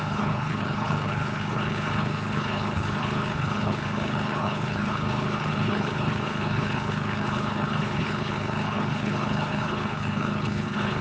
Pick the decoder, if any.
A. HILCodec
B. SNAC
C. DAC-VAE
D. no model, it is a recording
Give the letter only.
A